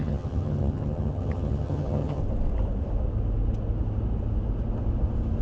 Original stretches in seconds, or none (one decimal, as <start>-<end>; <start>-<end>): 2.2-5.4